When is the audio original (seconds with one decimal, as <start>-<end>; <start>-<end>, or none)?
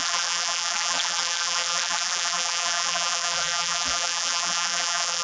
none